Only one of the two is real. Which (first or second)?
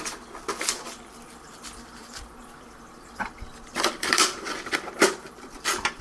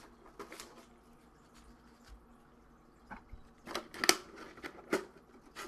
second